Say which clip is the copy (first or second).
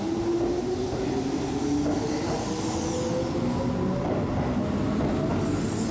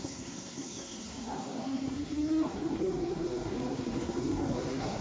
second